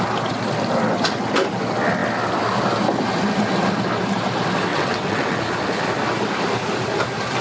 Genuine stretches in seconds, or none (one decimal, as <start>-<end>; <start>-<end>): 0.0-4.7; 5.4-7.4